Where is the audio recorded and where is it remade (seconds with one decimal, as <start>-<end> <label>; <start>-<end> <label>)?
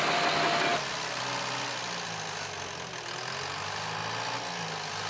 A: 0.0-5.1 recorded